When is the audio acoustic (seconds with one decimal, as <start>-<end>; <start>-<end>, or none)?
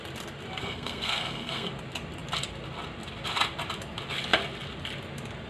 0.0-0.6; 1.7-5.5